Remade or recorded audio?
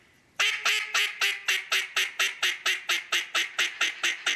recorded